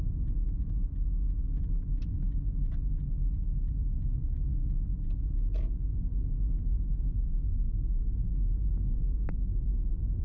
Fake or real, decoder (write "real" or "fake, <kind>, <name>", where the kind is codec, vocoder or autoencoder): real